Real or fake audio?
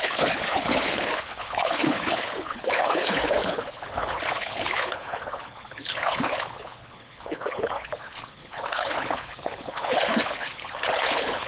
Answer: fake